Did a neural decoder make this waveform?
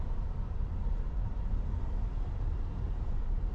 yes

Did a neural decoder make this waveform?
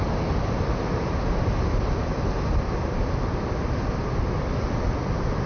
no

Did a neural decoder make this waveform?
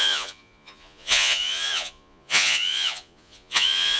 yes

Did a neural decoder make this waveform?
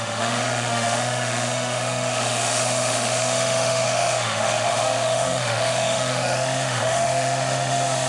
yes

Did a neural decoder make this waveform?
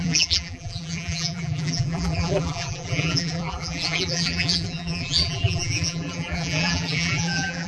yes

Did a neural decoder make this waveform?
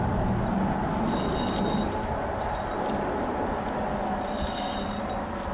no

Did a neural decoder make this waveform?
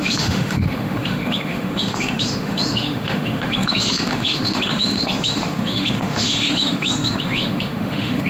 yes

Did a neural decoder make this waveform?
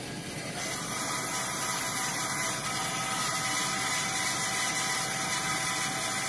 no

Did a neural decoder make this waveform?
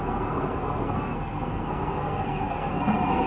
yes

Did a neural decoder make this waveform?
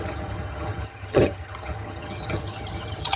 yes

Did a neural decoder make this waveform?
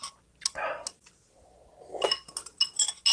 no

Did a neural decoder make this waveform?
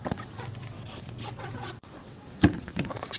yes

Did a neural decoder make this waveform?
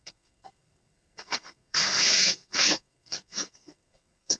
yes